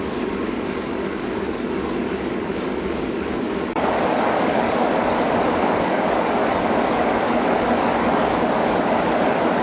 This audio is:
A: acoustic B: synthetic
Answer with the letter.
B